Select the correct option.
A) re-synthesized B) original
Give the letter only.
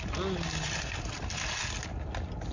B